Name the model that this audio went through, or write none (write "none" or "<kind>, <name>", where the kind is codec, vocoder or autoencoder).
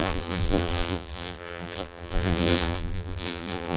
vocoder, BigVGAN v2